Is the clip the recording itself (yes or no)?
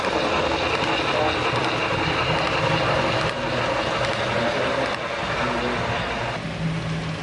yes